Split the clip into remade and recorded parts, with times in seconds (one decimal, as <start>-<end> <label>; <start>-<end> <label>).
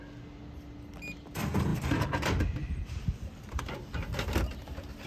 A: 0.0-1.7 recorded; 1.7-3.3 remade; 3.3-5.1 recorded